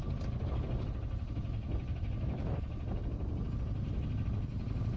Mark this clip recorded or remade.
recorded